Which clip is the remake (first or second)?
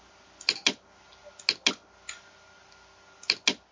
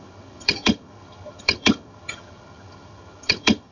second